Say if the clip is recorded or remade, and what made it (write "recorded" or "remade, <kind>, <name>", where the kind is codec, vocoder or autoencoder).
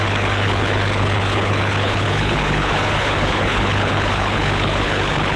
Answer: remade, codec, HILCodec